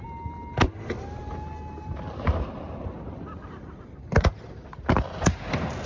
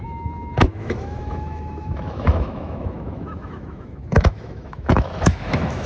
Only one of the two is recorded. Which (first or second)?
first